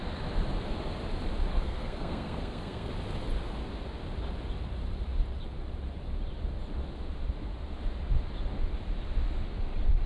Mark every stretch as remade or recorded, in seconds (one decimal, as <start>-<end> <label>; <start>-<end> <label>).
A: 0.0-1.5 recorded; 1.5-2.9 remade; 2.9-10.1 recorded